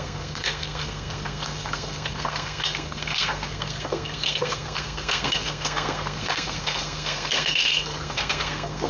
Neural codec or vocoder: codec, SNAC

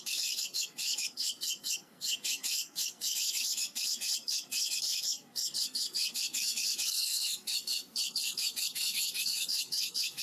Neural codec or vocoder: codec, SNAC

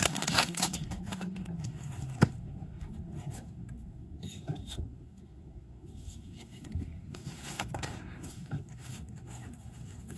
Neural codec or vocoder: codec, SNAC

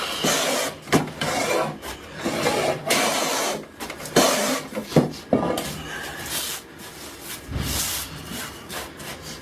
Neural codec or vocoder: none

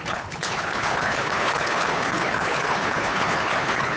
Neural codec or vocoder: codec, HILCodec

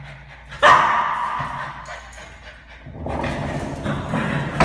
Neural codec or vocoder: none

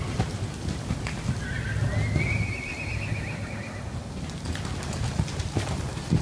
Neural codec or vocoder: none